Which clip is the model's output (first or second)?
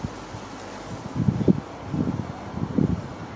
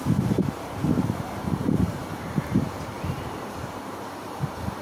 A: second